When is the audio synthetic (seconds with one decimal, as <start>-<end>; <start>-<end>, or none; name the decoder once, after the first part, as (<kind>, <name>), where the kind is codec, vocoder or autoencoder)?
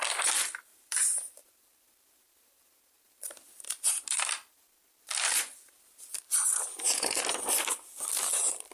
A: 0.7-3.5 (vocoder, BigVGAN v2)